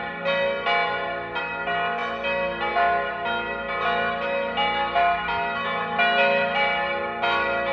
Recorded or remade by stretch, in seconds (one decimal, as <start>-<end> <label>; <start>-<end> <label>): 0.0-7.7 recorded